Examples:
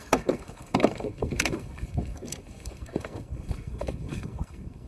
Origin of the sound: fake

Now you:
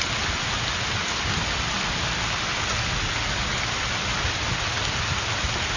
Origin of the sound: real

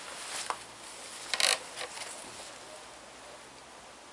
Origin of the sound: real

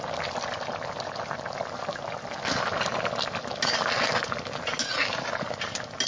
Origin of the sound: real